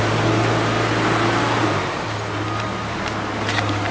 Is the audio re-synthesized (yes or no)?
no